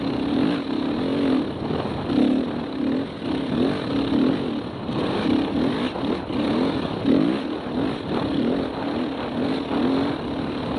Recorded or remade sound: recorded